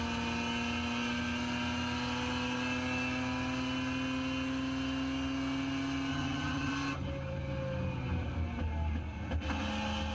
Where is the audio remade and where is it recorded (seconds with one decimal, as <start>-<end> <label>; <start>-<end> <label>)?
0.0-6.1 recorded; 6.1-6.7 remade; 6.7-10.1 recorded